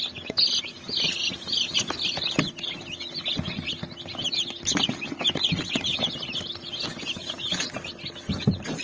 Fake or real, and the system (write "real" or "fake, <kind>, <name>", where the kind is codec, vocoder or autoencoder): real